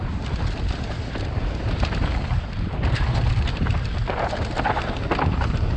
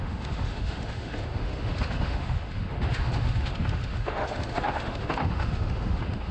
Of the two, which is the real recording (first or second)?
first